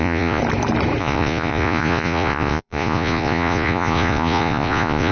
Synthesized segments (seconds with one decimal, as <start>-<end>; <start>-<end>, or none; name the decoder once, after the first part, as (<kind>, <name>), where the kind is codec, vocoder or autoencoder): 0.0-0.4 (vocoder, Vocos); 1.0-5.1